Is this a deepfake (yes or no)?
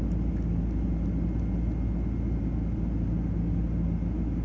no